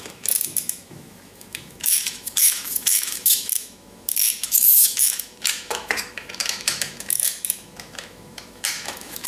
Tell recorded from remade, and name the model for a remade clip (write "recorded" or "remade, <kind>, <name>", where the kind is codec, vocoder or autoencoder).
remade, autoencoder, DAC-VAE